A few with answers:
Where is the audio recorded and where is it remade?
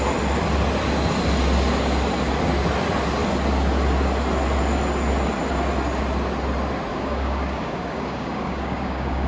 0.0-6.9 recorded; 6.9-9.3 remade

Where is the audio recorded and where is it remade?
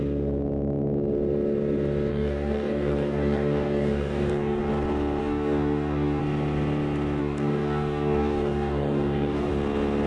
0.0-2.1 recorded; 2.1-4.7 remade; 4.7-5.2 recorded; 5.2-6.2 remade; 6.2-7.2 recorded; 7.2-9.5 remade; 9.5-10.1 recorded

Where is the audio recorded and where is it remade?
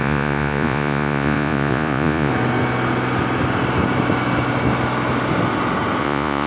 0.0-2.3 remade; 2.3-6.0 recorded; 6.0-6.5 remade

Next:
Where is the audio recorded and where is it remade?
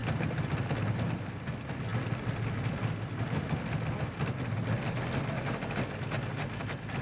0.0-7.0 recorded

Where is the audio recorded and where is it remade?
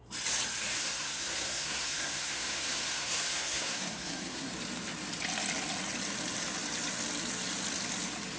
0.0-0.7 recorded; 0.7-4.5 remade; 4.5-8.4 recorded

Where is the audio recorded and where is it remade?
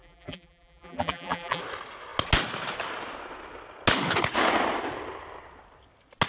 0.0-1.6 remade; 1.6-6.3 recorded